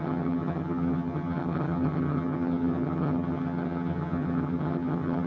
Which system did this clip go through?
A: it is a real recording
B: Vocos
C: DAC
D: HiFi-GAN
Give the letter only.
D